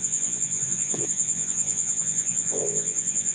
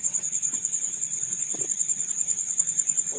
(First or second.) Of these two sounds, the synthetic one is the first